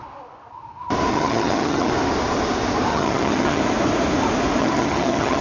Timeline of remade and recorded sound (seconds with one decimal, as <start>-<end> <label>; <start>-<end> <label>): 0.0-1.1 recorded; 1.1-1.9 remade; 1.9-2.9 recorded; 2.9-3.6 remade; 3.6-4.6 recorded; 4.6-5.4 remade